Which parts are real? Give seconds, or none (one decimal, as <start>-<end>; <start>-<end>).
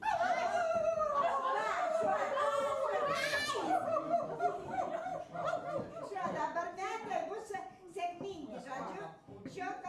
0.0-9.9